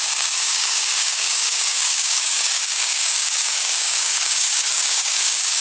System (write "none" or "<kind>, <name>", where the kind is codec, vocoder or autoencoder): codec, DAC